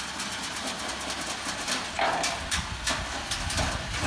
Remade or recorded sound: recorded